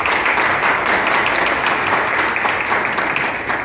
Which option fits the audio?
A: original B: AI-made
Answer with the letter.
A